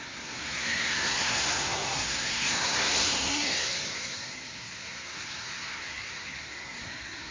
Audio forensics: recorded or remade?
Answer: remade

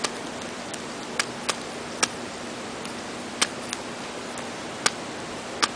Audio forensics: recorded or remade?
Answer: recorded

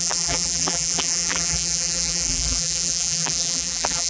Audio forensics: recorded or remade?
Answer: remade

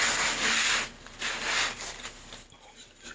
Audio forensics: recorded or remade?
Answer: recorded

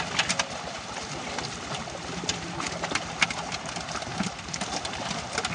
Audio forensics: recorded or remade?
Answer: recorded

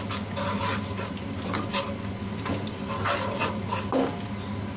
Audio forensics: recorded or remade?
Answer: recorded